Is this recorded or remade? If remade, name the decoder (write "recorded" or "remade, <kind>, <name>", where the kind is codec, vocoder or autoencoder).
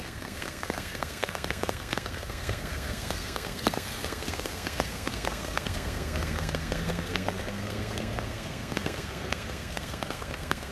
remade, codec, SNAC